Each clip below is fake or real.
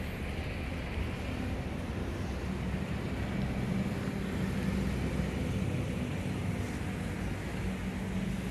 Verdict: real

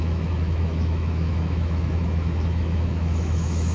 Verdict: fake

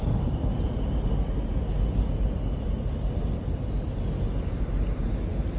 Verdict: real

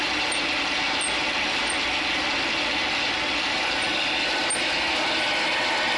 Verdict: real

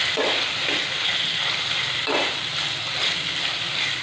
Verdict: real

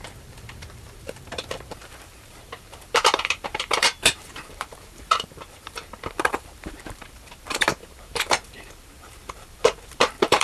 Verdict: fake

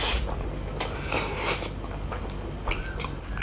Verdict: real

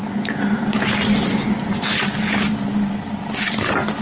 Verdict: real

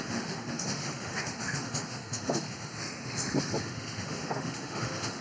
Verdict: fake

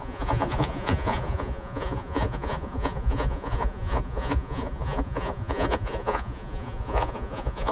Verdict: fake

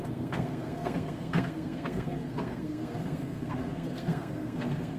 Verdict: fake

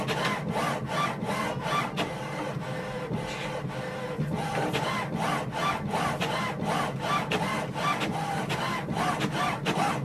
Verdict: real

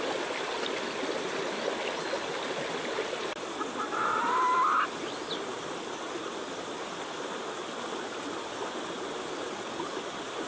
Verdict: real